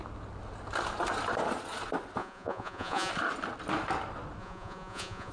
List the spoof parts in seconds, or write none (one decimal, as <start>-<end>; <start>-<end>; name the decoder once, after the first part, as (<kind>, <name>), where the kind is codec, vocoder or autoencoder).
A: 2.2-3.1 (vocoder, Vocos); 4.4-5.3

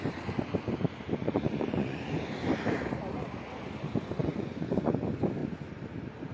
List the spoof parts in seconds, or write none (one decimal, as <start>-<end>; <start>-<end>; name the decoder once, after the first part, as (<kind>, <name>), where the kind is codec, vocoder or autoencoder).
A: 1.2-2.1 (vocoder, Vocos); 4.2-5.0